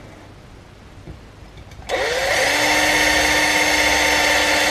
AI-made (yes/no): no